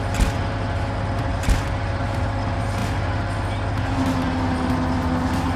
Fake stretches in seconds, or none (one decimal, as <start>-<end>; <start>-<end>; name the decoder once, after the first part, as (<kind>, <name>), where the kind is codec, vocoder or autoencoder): 1.3-2.0 (vocoder, BigVGAN v2)